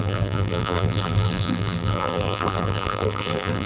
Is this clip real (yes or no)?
no